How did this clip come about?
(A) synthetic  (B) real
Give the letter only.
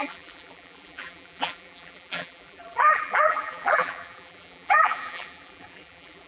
A